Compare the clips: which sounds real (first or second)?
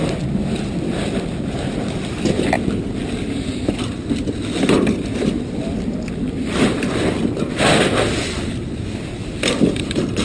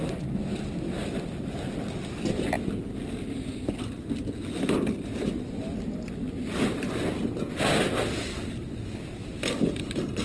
second